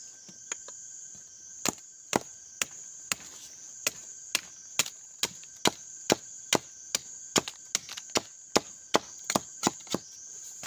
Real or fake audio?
real